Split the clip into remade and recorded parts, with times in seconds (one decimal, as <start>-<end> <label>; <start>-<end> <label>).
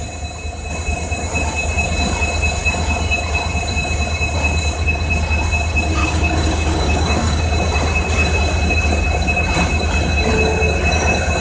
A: 0.0-6.0 recorded; 6.0-7.4 remade; 7.4-11.4 recorded